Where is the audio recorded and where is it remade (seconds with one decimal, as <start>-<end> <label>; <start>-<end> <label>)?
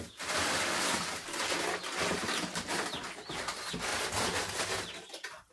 0.0-5.5 recorded